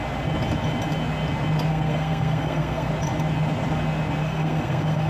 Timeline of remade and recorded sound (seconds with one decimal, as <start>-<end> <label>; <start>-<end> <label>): 0.0-1.7 recorded; 1.7-2.9 remade; 2.9-4.2 recorded; 4.2-5.1 remade